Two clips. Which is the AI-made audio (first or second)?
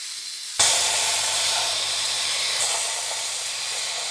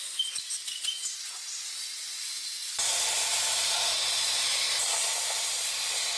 first